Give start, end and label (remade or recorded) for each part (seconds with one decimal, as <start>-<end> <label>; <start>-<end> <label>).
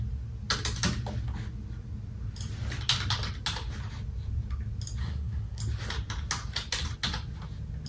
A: 0.0-5.0 recorded; 5.0-5.6 remade; 5.6-7.9 recorded